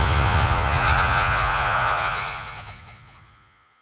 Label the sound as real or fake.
fake